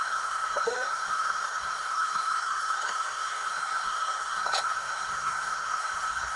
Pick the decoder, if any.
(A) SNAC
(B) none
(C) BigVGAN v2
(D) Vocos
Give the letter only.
A